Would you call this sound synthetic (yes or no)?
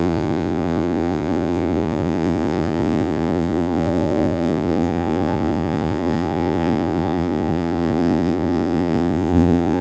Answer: yes